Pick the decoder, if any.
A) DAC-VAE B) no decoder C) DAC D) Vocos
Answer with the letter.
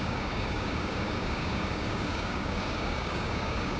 C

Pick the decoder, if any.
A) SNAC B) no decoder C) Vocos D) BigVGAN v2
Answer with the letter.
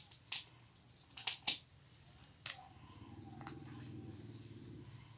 B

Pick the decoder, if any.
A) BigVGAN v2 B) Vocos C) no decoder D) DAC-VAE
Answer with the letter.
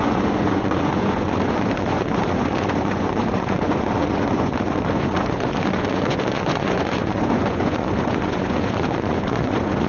B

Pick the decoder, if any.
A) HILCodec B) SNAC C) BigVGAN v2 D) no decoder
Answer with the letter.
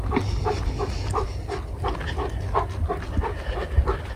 D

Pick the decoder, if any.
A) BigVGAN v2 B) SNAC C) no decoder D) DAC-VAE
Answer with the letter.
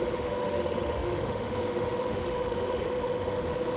D